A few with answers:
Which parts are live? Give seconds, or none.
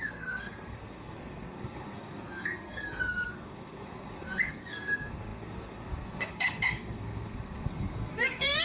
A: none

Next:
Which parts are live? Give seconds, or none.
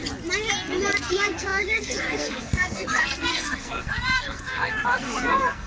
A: 0.0-1.1